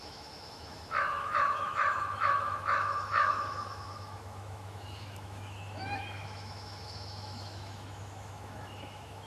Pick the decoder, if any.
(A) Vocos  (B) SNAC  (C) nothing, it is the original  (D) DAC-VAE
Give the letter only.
D